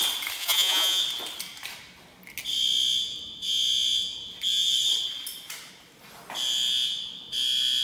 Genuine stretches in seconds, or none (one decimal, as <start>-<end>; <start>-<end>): 0.0-0.4; 1.0-7.8